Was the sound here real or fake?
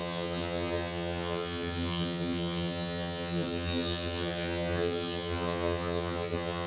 fake